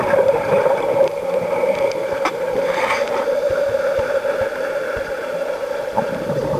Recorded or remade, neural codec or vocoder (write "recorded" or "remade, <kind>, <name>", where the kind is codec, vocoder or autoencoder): remade, vocoder, BigVGAN v2